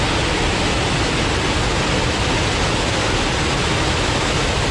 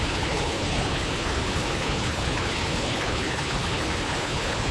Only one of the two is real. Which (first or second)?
first